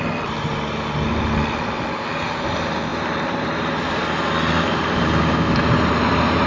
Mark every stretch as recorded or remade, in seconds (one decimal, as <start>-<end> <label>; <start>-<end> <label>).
0.0-6.5 recorded

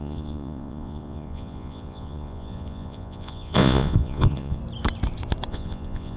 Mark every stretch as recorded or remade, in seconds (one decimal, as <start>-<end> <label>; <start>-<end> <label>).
0.0-4.6 remade; 4.6-5.5 recorded; 5.5-6.2 remade

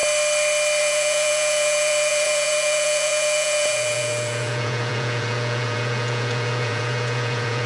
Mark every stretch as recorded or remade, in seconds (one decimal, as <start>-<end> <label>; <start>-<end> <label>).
0.0-0.8 recorded; 0.8-7.7 remade

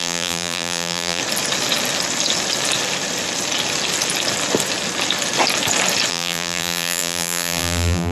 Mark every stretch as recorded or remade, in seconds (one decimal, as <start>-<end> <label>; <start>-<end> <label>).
0.0-1.2 remade; 1.2-6.1 recorded; 6.1-8.1 remade

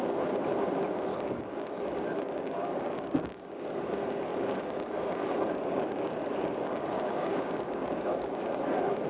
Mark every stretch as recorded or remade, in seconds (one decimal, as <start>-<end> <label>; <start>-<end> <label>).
0.0-1.1 recorded; 1.1-3.8 remade; 3.8-4.3 recorded; 4.3-8.6 remade; 8.6-9.1 recorded